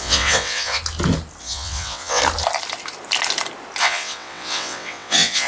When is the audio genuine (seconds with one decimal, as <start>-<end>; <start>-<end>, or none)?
0.8-1.4; 2.2-3.8